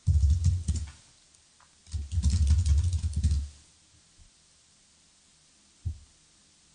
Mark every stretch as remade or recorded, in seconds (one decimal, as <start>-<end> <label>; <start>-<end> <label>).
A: 0.0-6.7 recorded